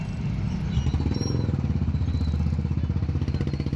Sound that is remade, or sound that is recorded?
recorded